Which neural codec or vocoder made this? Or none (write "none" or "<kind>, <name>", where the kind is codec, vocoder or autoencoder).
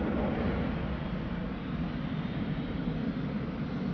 none